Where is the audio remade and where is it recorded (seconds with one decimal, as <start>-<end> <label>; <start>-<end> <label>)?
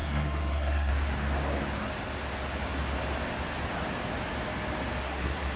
0.0-0.9 remade; 0.9-5.0 recorded; 5.0-5.6 remade